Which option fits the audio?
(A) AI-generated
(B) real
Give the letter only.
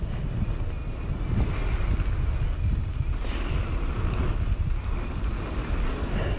B